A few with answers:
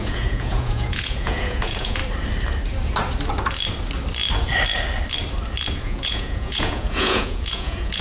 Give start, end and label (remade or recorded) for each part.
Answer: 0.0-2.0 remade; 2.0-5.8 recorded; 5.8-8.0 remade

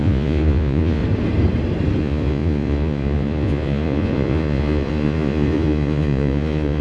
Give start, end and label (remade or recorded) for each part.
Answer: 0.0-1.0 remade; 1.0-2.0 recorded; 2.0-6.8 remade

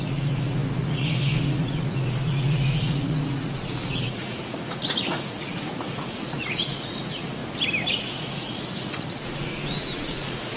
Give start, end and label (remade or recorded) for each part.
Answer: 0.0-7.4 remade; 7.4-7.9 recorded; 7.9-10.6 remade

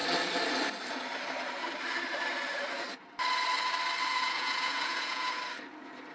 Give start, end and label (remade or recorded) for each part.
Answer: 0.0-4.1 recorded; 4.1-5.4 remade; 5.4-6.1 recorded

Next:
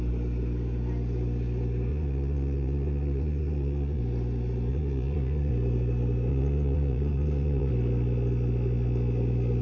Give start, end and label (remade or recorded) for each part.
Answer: 0.0-1.9 recorded; 1.9-4.0 remade; 4.0-4.7 recorded; 4.7-5.5 remade; 5.5-6.3 recorded; 6.3-7.7 remade; 7.7-9.6 recorded